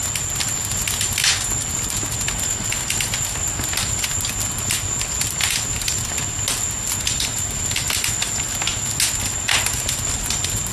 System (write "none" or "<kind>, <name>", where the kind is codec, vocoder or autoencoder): none